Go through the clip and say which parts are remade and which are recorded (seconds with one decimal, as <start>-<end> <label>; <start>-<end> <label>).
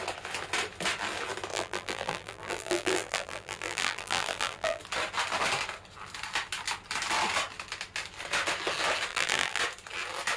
0.0-1.5 recorded; 1.5-4.8 remade; 4.8-9.1 recorded; 9.1-9.6 remade; 9.6-10.4 recorded